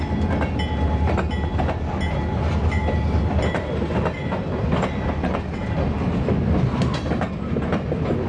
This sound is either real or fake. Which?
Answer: real